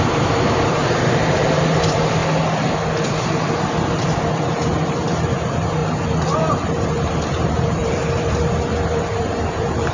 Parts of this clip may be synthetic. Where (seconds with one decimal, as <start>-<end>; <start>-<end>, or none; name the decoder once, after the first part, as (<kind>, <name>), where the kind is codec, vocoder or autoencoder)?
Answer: 0.0-2.2 (vocoder, BigVGAN v2); 3.1-5.8; 6.5-9.9